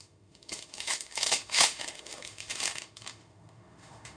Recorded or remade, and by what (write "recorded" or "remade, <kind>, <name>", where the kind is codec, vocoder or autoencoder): remade, autoencoder, DAC-VAE